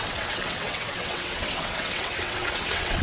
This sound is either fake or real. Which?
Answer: fake